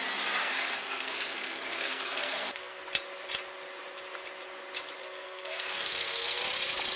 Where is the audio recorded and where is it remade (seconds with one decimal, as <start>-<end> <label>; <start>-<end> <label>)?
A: 0.0-0.4 recorded; 0.4-2.8 remade; 2.8-5.0 recorded; 5.0-6.4 remade; 6.4-7.0 recorded